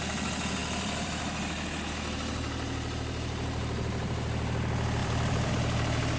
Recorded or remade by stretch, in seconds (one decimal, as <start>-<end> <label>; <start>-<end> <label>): 0.0-0.6 recorded; 0.6-1.2 remade; 1.2-5.0 recorded; 5.0-5.5 remade; 5.5-6.2 recorded